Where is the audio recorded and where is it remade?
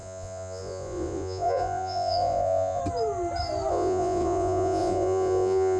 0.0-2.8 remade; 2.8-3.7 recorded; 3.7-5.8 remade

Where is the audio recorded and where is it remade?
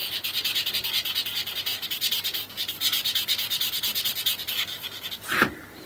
0.0-5.9 recorded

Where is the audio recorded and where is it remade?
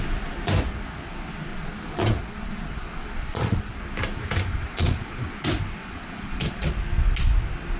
0.0-1.5 recorded; 1.5-3.8 remade; 3.8-4.5 recorded; 4.5-5.3 remade; 5.3-5.8 recorded; 5.8-6.7 remade; 6.7-7.8 recorded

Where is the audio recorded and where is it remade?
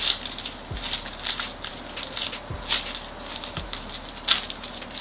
0.0-5.0 recorded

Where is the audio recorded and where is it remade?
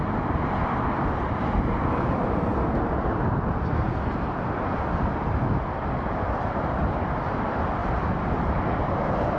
0.0-9.4 recorded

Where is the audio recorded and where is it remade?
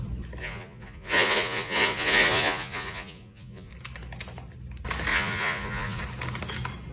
0.0-0.4 recorded; 0.4-3.7 remade; 3.7-5.1 recorded; 5.1-6.0 remade; 6.0-6.9 recorded